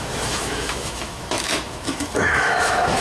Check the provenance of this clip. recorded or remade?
remade